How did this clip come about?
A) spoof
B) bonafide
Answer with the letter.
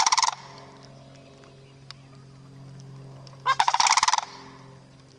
B